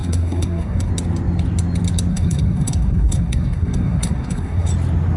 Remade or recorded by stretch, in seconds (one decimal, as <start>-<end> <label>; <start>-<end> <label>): 0.0-0.9 remade; 0.9-2.1 recorded; 2.1-4.7 remade; 4.7-5.2 recorded